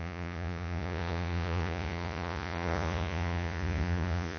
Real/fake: fake